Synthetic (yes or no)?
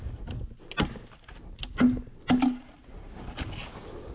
no